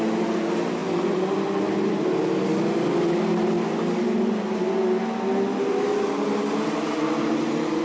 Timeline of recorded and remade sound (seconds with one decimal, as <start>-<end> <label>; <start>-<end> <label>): 0.0-7.8 recorded